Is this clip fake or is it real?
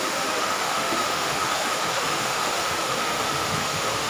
fake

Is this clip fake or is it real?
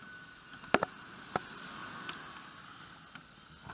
real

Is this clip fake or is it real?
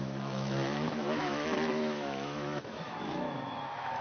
fake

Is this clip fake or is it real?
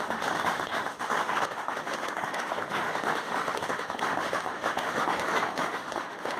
fake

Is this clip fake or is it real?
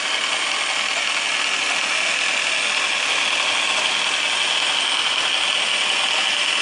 real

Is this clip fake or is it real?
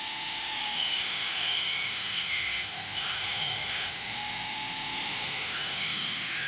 fake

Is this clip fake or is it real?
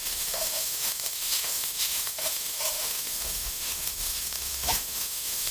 fake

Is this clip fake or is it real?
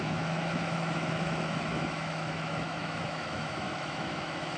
fake